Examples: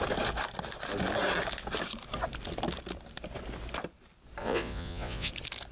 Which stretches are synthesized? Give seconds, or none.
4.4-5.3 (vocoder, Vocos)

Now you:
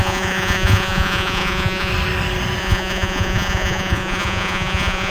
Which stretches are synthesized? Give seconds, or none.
0.0-1.9 (vocoder, Vocos); 2.6-5.1